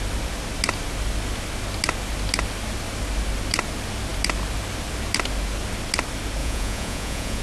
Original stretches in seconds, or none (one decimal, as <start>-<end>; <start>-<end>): 0.0-6.4